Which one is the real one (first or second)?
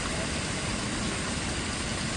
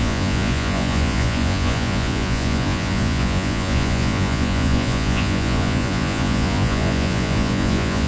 first